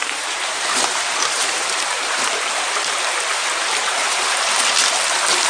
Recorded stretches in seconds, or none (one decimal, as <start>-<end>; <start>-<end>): 2.3-4.0; 4.6-5.5